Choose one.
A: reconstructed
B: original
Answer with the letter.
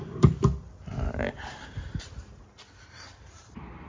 A